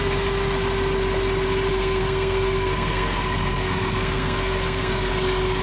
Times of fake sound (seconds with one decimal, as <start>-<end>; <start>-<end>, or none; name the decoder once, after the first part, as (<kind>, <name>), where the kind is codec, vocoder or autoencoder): 1.7-5.1 (codec, SNAC)